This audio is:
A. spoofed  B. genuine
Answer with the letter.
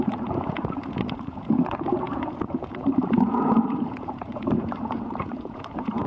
A